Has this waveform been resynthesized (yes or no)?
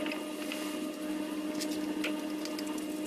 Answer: no